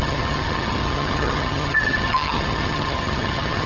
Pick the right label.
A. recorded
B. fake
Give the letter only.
B